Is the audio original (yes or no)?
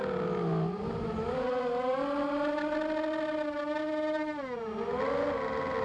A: yes